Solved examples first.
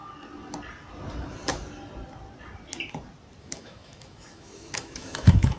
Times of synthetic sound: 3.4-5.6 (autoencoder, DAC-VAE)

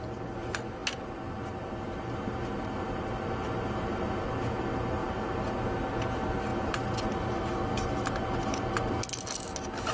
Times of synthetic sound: none

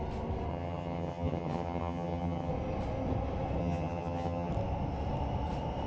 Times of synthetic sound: 0.5-2.5 (vocoder, HiFi-GAN); 3.6-4.5

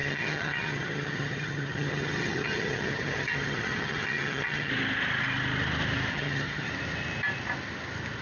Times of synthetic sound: 0.0-4.7 (vocoder, HiFi-GAN); 6.1-6.7

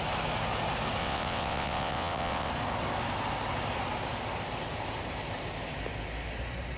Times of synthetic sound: 1.0-2.5 (vocoder, WaveNeXt)

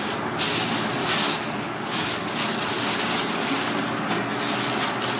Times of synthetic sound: 1.0-2.3 (codec, DAC)

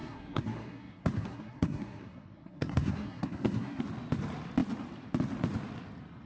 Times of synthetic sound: 0.0-3.8 (codec, SNAC)